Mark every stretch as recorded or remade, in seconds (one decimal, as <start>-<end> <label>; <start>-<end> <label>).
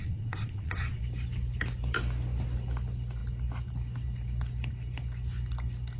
0.0-1.0 remade; 1.0-6.0 recorded